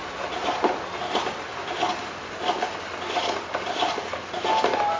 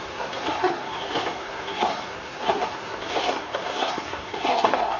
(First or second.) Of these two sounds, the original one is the first